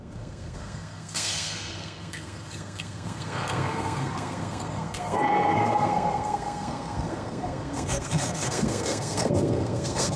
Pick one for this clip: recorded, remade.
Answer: remade